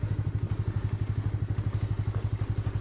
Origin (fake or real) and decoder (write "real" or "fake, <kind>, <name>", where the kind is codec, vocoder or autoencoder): real